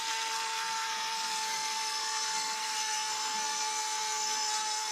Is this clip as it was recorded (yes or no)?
no